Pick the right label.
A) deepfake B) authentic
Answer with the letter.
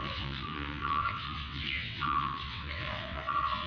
A